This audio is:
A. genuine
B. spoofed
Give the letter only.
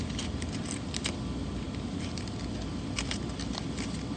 A